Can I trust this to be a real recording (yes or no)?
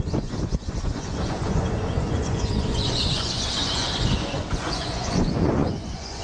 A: no